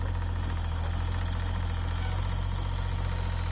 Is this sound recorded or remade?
recorded